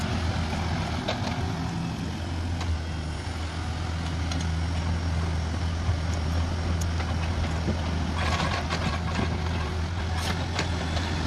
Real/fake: real